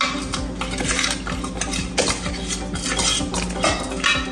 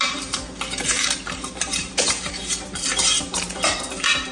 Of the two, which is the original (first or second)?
first